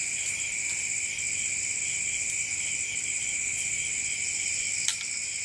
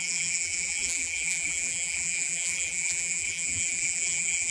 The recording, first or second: first